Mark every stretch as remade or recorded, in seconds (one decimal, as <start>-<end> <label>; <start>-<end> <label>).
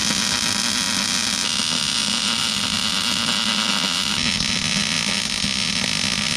0.0-6.4 recorded